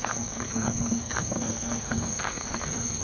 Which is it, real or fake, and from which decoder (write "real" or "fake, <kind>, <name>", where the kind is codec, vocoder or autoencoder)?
fake, codec, SNAC